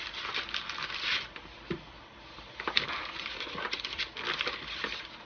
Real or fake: real